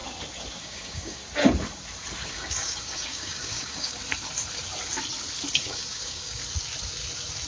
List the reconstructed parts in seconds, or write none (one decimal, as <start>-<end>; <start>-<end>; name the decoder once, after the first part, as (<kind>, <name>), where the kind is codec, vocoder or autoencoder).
0.6-1.2 (codec, DAC); 2.3-4.0; 5.5-6.4